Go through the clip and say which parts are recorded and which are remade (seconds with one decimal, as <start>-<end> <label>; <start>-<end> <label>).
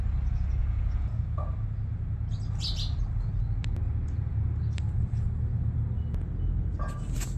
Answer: 0.0-0.6 recorded; 0.6-1.4 remade; 1.4-7.4 recorded